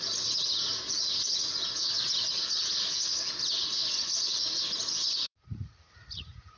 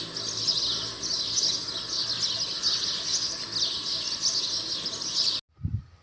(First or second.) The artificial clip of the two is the first